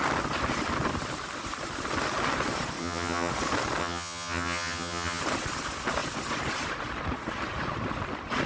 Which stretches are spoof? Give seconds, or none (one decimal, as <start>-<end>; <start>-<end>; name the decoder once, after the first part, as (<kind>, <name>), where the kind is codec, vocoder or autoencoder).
2.8-3.3 (vocoder, HiFi-GAN); 3.8-5.2